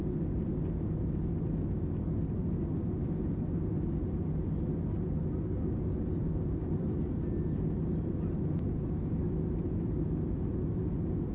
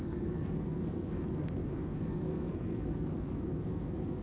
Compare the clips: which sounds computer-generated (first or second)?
second